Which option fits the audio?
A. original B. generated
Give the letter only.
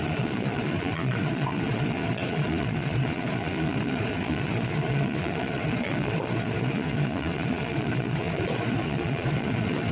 B